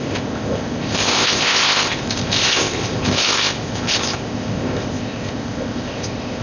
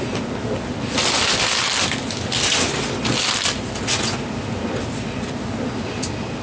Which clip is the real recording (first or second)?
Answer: second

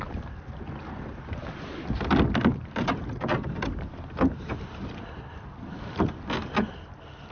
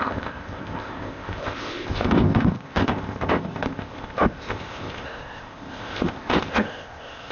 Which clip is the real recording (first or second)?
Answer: first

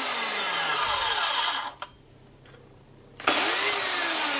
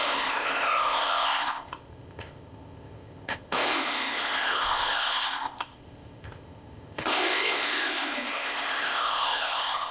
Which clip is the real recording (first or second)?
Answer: first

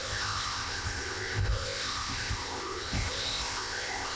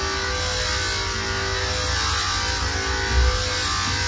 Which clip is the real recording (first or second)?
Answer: second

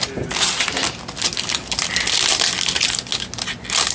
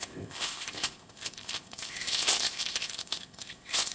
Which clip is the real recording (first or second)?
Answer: first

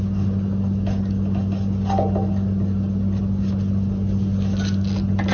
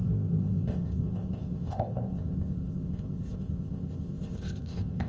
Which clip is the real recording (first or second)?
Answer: first